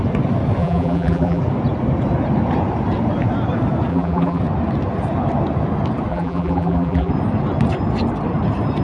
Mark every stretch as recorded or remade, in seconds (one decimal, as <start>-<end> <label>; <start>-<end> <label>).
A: 0.0-0.6 recorded; 0.6-1.4 remade; 1.4-3.9 recorded; 3.9-4.4 remade; 4.4-6.1 recorded; 6.1-7.1 remade; 7.1-8.8 recorded